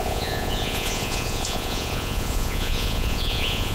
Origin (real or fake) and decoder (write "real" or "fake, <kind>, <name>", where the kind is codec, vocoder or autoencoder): fake, vocoder, Vocos